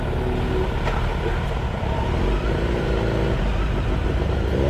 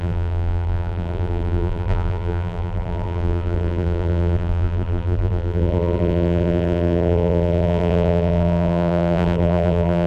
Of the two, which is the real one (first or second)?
first